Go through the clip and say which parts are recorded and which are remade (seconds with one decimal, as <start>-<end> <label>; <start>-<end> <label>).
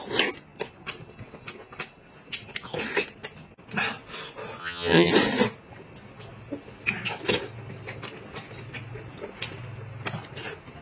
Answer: 0.0-4.6 recorded; 4.6-5.1 remade; 5.1-10.8 recorded